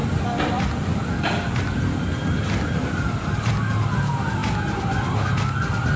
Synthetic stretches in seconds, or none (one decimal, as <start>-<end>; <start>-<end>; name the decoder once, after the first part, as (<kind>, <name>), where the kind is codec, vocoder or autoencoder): none